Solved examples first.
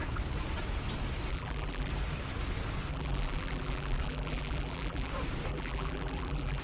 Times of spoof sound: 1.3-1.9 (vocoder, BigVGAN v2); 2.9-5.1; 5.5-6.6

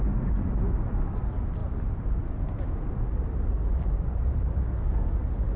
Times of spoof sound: 1.6-3.0 (vocoder, BigVGAN v2)

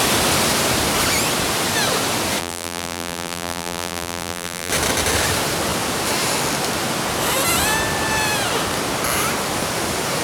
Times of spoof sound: 2.4-4.7 (vocoder, BigVGAN v2)

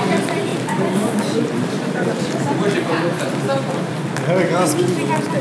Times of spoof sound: 0.5-3.7 (vocoder, BigVGAN v2)

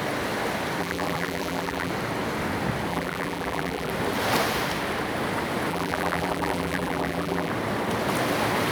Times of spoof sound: 0.8-1.9 (vocoder, BigVGAN v2); 2.9-3.9; 5.7-7.5

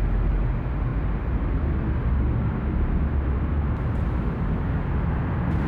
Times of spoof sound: none

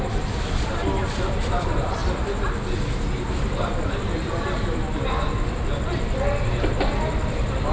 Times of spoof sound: 0.0-2.0 (vocoder, BigVGAN v2); 3.3-7.7

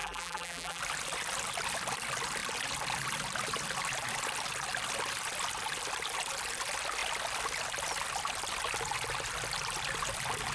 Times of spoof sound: 0.0-0.8 (vocoder, BigVGAN v2)